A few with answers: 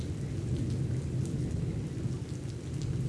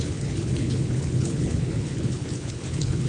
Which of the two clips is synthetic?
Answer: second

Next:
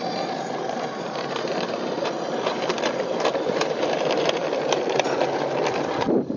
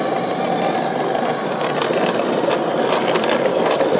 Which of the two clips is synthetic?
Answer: first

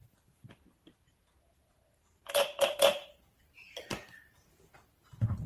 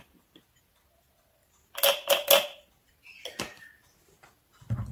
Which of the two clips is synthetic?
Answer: first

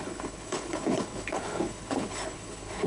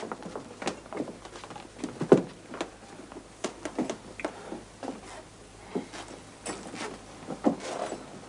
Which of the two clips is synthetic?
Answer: first